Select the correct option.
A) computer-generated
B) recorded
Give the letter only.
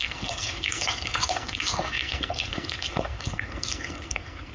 A